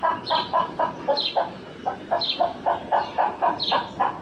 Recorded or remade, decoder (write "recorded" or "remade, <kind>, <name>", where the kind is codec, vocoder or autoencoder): recorded